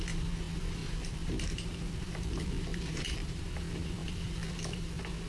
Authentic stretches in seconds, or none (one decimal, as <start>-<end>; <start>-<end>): 0.0-0.8; 3.4-4.0; 4.8-5.3